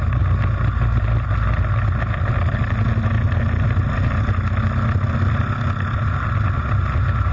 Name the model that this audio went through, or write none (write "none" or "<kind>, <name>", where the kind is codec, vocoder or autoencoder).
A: none